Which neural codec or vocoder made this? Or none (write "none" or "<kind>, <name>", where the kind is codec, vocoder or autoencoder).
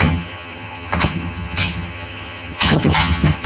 vocoder, HiFi-GAN